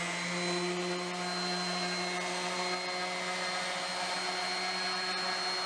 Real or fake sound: real